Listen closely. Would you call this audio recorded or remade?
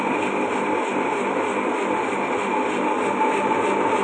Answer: recorded